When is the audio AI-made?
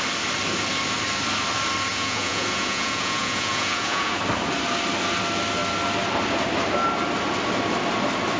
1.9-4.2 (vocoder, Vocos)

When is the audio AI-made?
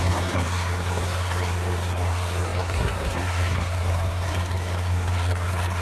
0.0-5.8 (codec, SNAC)